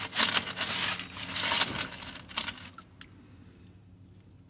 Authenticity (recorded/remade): recorded